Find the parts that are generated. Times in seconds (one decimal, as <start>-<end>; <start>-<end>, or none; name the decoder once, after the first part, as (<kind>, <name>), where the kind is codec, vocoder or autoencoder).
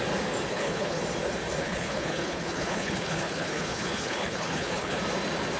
0.5-1.0 (codec, HILCodec); 1.6-5.0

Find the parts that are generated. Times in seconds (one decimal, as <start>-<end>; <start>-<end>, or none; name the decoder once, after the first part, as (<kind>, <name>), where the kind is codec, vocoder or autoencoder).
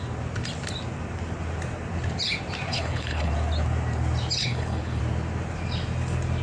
2.7-3.3 (codec, HILCodec); 4.4-5.0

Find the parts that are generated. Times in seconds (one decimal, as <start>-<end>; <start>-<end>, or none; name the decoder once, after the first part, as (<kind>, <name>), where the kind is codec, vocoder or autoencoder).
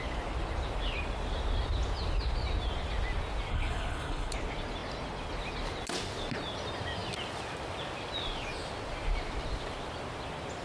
3.5-4.3 (codec, HILCodec)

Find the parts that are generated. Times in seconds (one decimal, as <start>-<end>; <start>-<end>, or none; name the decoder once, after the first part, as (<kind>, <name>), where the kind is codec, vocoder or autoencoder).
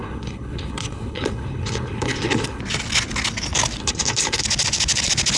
0.0-2.6 (codec, HILCodec); 3.8-4.4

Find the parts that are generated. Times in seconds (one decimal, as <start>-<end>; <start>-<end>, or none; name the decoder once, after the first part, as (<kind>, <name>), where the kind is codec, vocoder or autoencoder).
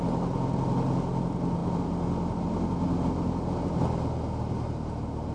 none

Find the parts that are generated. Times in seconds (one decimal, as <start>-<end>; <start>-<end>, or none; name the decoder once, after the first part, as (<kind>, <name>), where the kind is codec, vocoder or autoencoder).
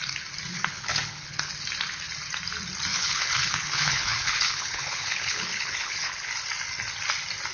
0.5-1.5 (codec, HILCodec); 2.9-6.3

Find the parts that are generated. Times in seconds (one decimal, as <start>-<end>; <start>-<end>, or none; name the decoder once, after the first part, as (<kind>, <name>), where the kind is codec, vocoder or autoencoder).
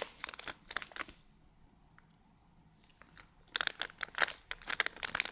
none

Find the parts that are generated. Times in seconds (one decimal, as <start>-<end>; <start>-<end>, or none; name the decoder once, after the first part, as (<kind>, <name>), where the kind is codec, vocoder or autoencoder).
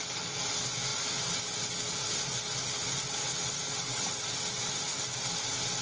none